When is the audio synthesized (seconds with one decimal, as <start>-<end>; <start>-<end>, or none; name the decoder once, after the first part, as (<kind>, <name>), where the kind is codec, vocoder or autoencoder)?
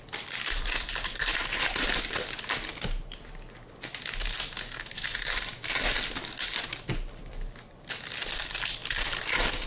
0.0-1.4 (vocoder, BigVGAN v2); 4.9-5.5; 6.7-9.7